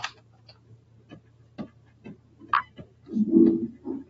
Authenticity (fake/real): real